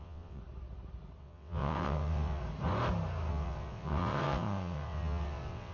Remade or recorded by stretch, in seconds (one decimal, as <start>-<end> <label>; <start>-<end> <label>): 0.0-0.4 remade; 0.4-1.2 recorded; 1.2-2.4 remade; 2.4-3.3 recorded; 3.3-5.7 remade